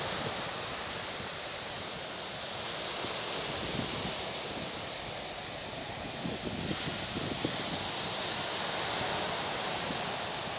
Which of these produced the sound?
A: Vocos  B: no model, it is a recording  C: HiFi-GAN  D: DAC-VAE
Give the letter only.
B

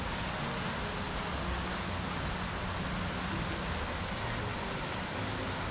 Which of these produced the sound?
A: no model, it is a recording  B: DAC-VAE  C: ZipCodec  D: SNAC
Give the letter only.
A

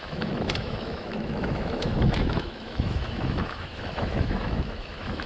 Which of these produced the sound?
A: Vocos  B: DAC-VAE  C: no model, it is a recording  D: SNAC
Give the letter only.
B